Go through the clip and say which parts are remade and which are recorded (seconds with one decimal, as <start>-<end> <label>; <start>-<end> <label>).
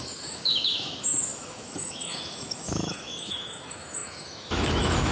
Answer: 0.0-5.1 remade